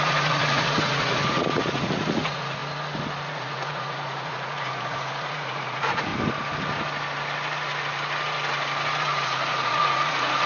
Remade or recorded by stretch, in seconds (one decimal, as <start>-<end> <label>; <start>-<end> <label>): 0.0-2.6 remade; 2.6-3.3 recorded; 3.3-6.1 remade; 6.1-9.0 recorded; 9.0-10.5 remade